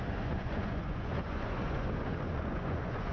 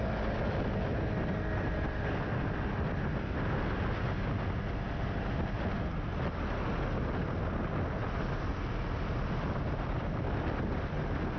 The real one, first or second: second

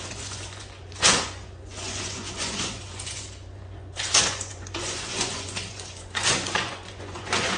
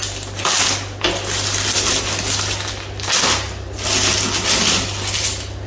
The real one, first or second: second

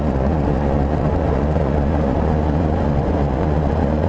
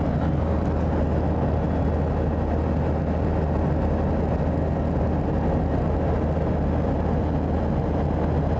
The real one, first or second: second